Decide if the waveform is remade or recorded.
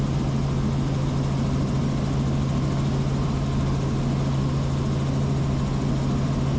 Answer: recorded